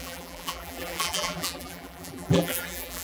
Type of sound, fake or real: fake